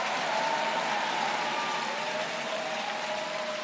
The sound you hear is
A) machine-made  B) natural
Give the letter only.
B